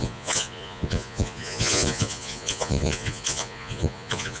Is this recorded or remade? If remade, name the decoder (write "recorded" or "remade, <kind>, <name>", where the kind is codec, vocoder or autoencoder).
remade, vocoder, Vocos